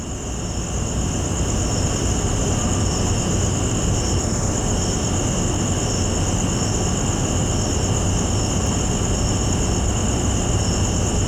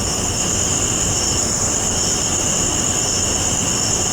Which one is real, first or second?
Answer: first